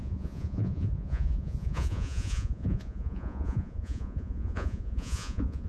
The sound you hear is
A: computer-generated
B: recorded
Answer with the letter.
A